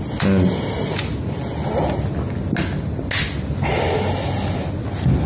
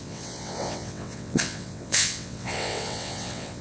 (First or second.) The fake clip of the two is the second